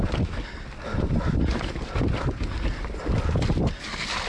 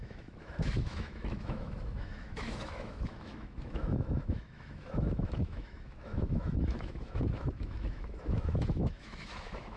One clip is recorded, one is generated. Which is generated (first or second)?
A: second